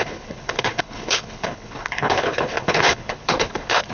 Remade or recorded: remade